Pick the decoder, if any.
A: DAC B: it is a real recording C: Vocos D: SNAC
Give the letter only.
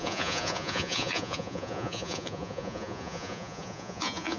C